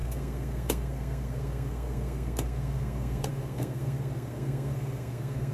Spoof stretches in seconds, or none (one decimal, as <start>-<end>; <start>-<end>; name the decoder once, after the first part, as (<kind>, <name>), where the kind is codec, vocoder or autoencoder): 0.0-5.5 (codec, SNAC)